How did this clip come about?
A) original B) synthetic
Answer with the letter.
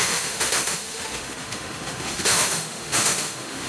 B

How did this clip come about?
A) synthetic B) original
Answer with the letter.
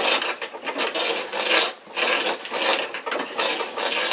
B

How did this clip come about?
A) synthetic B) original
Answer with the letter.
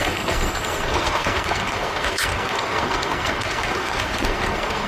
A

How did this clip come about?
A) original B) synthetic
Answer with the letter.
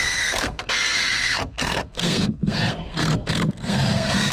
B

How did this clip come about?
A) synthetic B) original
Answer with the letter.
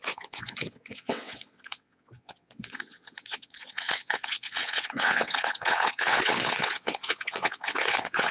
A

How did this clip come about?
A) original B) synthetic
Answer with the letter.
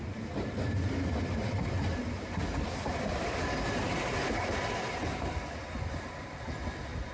A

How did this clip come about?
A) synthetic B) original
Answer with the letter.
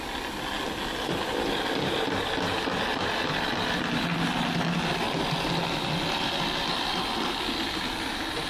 B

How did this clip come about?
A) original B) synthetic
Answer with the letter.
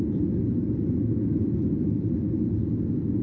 A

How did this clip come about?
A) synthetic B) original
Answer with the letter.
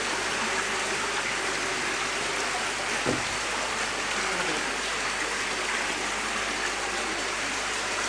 B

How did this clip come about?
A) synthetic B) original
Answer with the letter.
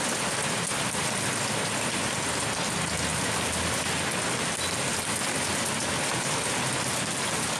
B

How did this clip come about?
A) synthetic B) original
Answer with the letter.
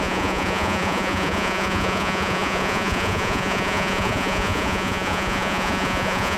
A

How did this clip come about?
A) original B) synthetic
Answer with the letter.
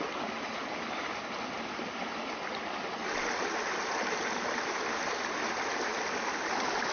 A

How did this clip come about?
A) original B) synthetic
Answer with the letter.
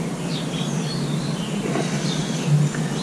A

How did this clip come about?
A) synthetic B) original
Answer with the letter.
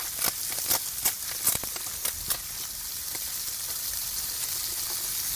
B